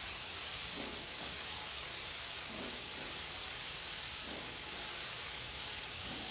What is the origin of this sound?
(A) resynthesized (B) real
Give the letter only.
A